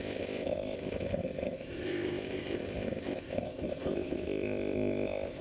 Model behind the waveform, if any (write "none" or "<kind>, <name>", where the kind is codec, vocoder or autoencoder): codec, ZipCodec